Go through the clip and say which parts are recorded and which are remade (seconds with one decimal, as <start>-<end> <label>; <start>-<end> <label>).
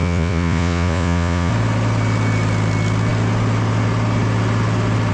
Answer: 0.0-1.5 remade; 1.5-5.1 recorded